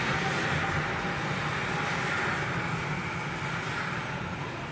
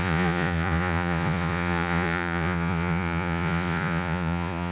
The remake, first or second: second